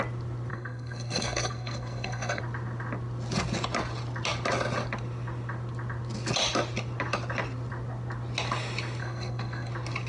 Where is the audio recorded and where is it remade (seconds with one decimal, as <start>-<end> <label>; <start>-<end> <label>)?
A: 0.0-0.5 recorded; 0.5-2.4 remade; 2.4-9.0 recorded; 9.0-9.7 remade; 9.7-10.1 recorded